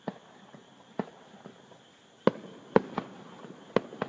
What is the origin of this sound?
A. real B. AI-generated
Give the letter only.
A